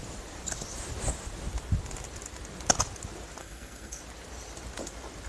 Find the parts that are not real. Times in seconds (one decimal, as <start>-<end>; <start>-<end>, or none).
3.4-4.0